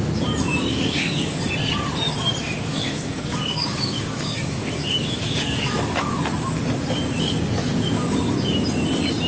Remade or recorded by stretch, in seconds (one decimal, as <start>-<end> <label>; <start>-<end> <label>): 0.0-0.7 recorded; 0.7-1.5 remade; 1.5-2.4 recorded; 2.4-6.2 remade; 6.2-9.3 recorded